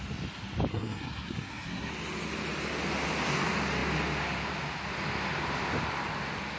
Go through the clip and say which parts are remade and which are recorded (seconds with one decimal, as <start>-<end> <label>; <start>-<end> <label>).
0.0-0.7 recorded; 0.7-1.9 remade; 1.9-6.6 recorded